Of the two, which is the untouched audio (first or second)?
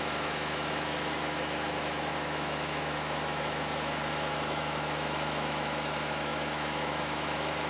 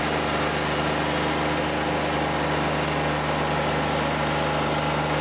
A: second